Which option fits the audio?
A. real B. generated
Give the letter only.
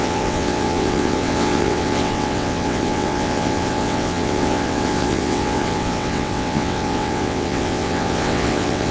B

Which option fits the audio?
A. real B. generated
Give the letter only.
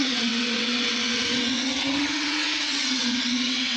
B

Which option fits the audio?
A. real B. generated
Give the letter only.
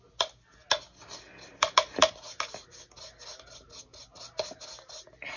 A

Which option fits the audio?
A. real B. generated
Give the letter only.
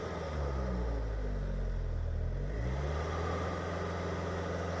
A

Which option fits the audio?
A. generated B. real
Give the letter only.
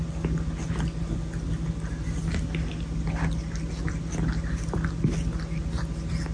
B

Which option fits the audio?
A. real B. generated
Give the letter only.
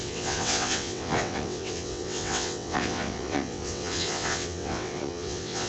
B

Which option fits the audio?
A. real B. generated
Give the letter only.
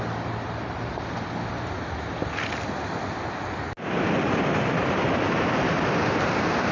A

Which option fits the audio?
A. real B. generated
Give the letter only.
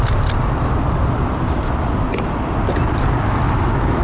A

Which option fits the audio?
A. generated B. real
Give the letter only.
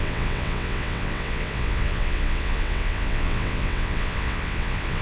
A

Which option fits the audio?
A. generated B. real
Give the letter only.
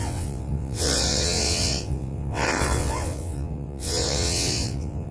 A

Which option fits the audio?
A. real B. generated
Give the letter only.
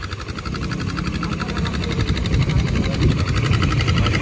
A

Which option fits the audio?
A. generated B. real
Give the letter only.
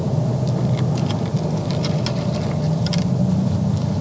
B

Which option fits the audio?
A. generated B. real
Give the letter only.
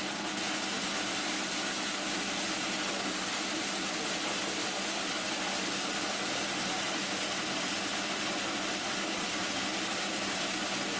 B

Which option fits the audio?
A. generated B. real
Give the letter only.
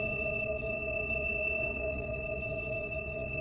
A